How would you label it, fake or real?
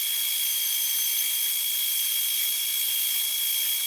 real